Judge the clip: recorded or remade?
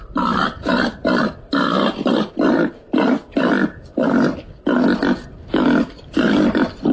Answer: recorded